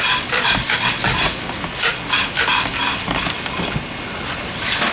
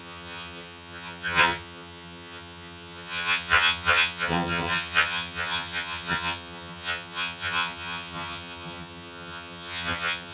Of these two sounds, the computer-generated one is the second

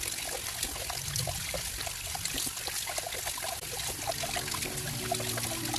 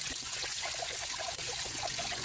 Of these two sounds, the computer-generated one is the second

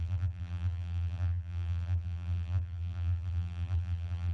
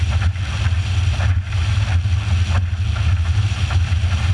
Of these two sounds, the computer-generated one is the first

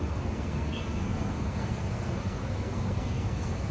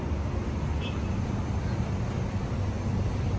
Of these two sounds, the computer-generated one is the first